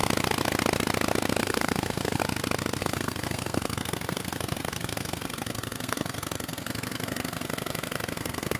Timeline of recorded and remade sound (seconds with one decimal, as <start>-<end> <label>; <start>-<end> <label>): 0.0-1.4 recorded; 1.4-2.2 remade; 2.2-2.8 recorded; 2.8-8.6 remade